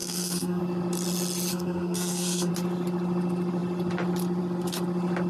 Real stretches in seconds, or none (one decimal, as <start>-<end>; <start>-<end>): 0.6-1.5; 2.5-5.3